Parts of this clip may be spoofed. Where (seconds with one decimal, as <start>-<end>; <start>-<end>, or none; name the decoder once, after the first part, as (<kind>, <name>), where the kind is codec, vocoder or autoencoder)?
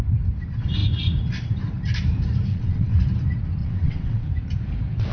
2.5-3.0 (vocoder, WaveNeXt); 3.6-4.3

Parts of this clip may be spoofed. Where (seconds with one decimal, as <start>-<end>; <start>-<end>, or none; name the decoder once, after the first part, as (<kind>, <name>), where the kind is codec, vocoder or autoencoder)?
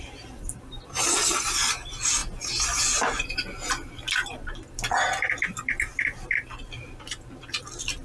0.0-2.2 (vocoder, BigVGAN v2); 5.4-8.0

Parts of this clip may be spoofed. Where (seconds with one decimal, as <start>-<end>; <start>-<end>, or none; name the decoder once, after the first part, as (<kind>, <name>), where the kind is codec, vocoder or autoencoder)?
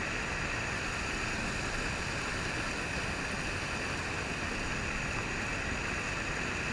none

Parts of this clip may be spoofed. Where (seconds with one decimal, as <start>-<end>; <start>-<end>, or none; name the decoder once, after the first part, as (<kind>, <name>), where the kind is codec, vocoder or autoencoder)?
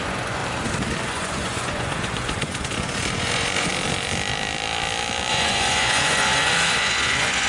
0.0-0.4 (vocoder, Vocos); 1.0-3.7; 5.3-7.5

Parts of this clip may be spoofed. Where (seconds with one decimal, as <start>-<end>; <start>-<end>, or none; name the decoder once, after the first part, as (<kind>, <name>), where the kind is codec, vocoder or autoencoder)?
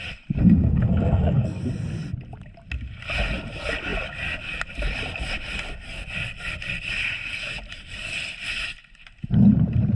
0.4-1.6 (codec, SNAC)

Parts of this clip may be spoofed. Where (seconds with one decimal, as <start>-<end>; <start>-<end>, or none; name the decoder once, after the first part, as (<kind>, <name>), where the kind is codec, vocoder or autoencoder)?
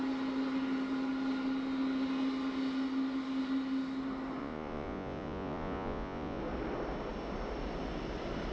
4.4-6.4 (vocoder, Vocos)